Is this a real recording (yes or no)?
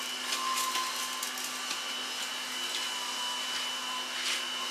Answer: yes